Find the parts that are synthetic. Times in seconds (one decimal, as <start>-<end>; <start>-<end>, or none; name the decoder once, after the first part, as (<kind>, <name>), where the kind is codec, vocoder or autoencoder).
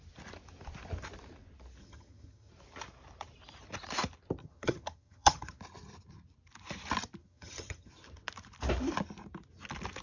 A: 1.8-2.5 (vocoder, HiFi-GAN); 4.4-5.6; 7.2-7.9